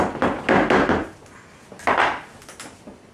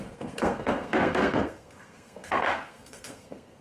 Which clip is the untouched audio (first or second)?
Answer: first